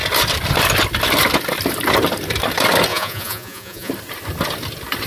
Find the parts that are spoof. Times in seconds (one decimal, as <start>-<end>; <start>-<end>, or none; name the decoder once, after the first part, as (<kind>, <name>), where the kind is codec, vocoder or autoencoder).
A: 2.9-3.9 (vocoder, Vocos)